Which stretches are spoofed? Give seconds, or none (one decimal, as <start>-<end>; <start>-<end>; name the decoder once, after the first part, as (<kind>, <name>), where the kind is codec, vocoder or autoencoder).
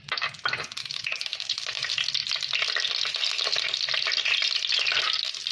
0.8-1.8 (autoencoder, DAC-VAE)